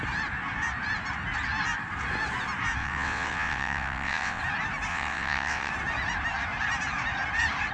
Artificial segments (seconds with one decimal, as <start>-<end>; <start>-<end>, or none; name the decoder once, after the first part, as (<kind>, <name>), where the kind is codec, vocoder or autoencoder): 2.8-4.4 (vocoder, WaveNeXt); 4.9-5.7